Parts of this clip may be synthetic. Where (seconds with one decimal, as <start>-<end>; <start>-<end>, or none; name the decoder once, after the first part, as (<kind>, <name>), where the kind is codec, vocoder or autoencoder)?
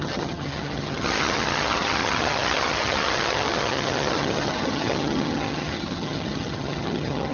0.0-7.3 (vocoder, HiFi-GAN)